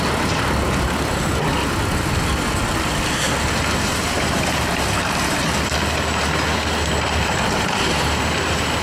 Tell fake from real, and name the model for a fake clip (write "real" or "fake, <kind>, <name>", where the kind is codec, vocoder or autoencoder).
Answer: real